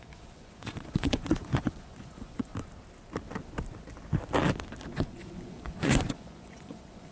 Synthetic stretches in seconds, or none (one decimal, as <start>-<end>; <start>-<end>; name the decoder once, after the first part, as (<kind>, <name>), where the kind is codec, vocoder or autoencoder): 0.0-2.5 (vocoder, Vocos); 4.9-7.1